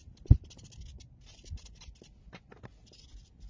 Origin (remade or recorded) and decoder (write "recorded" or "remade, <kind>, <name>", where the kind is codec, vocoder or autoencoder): recorded